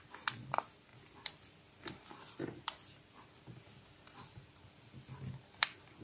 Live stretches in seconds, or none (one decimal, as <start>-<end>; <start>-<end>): 0.0-6.0